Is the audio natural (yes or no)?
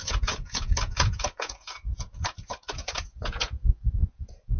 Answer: no